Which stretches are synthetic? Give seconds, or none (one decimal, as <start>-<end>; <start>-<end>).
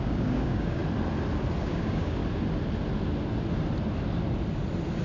0.0-0.8; 1.6-2.2